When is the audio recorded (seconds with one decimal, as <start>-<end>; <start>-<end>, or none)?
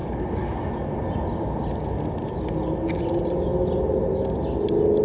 0.0-5.0